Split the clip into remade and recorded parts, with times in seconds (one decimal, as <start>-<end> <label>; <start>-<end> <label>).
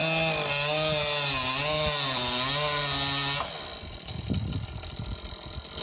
0.0-5.8 recorded